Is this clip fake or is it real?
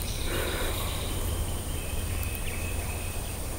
fake